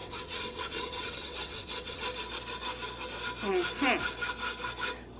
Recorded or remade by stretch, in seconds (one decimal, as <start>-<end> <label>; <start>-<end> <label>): 0.0-2.0 remade; 2.0-5.2 recorded